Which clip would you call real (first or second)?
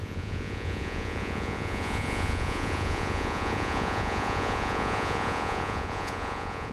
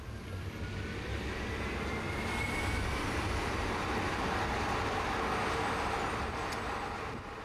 second